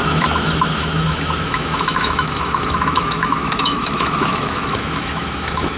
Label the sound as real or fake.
fake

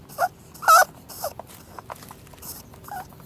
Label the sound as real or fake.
real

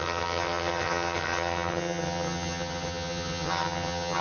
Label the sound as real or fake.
fake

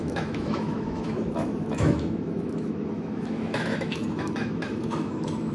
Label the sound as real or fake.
fake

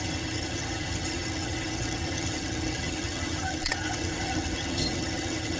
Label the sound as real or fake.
fake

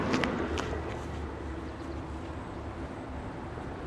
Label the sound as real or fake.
real